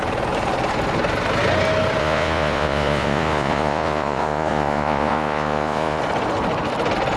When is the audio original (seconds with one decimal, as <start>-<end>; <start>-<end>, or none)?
0.0-2.0; 6.0-7.2